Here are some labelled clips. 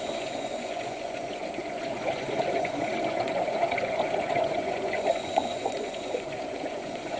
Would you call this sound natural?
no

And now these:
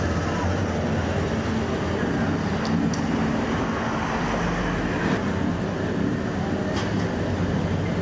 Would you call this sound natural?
yes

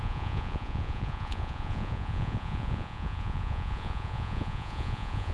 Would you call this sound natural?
no